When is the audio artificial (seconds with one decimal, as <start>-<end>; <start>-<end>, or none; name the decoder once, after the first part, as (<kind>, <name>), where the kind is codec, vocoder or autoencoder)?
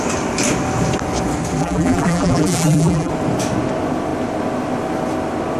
1.6-3.1 (vocoder, BigVGAN v2)